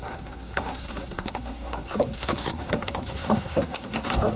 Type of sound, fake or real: fake